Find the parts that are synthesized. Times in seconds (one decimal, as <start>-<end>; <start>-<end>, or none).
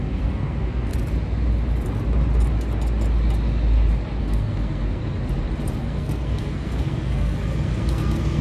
0.0-0.9; 4.2-5.0; 5.8-8.4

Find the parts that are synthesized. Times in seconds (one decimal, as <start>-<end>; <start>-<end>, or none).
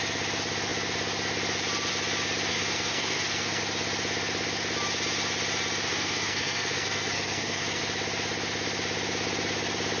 2.5-3.6; 5.9-7.8